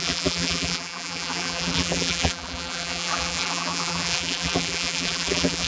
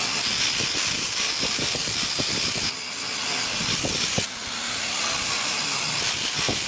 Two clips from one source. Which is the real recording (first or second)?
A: second